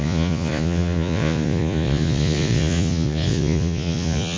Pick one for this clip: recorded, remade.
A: remade